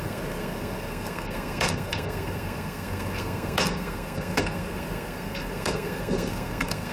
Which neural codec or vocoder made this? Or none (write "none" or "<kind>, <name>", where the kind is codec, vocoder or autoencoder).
codec, SNAC